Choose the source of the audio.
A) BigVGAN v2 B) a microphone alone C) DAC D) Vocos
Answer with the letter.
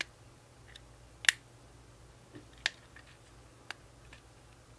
B